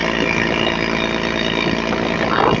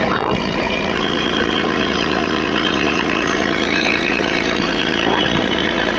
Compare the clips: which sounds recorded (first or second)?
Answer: first